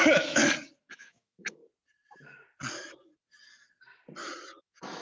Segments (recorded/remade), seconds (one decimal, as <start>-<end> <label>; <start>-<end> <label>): 0.0-0.4 remade; 0.4-0.9 recorded; 0.9-1.6 remade; 1.6-4.6 recorded; 4.6-5.0 remade